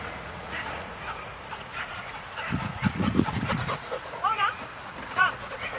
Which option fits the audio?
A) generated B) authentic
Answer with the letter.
A